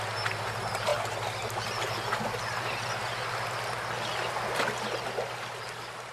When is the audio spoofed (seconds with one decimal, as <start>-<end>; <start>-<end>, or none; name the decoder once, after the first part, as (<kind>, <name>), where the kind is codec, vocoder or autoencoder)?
none